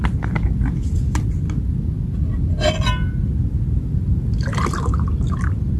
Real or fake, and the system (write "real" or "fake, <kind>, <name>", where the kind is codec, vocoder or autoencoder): real